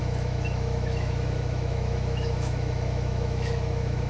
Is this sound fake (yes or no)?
yes